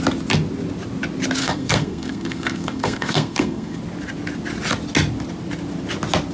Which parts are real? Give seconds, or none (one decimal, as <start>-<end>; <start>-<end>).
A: 0.0-1.4; 3.8-6.3